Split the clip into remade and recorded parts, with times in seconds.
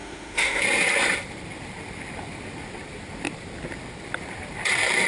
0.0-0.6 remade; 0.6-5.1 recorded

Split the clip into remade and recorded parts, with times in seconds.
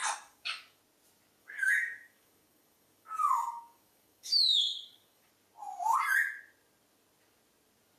0.0-0.8 remade; 0.8-1.4 recorded; 1.4-5.3 remade; 5.3-8.0 recorded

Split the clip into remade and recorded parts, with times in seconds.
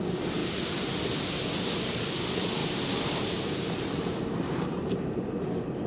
0.0-0.4 recorded; 0.4-0.9 remade; 0.9-2.6 recorded; 2.6-5.9 remade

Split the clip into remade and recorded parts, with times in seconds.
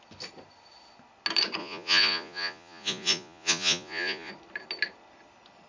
0.0-1.6 recorded; 1.6-4.3 remade; 4.3-5.7 recorded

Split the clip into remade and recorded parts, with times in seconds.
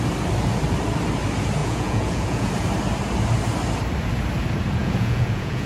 0.0-1.6 recorded; 1.6-2.5 remade; 2.5-4.8 recorded; 4.8-5.7 remade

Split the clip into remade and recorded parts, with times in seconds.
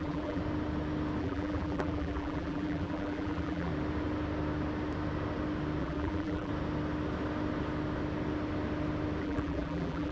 0.0-0.4 remade; 0.4-1.2 recorded; 1.2-3.7 remade; 3.7-5.8 recorded; 5.8-6.5 remade; 6.5-9.2 recorded; 9.2-10.1 remade